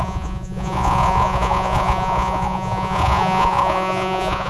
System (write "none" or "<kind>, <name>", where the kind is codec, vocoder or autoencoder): vocoder, Vocos